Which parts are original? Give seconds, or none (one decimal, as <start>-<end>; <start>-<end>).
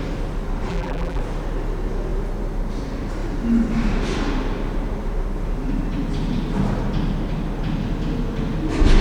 0.0-0.7; 1.2-9.0